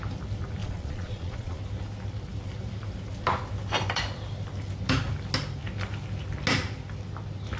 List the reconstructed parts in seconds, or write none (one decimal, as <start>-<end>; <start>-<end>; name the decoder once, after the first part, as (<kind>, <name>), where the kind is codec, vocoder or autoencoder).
0.6-1.6 (vocoder, Vocos)